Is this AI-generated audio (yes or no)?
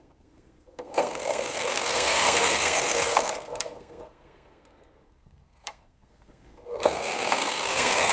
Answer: yes